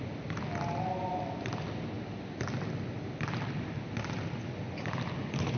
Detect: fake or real real